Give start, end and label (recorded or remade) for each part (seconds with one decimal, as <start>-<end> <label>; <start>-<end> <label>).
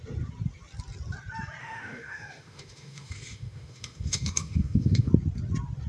0.0-1.6 recorded; 1.6-5.1 remade; 5.1-5.9 recorded